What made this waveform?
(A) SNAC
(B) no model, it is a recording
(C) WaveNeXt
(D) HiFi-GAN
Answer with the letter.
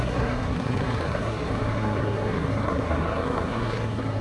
A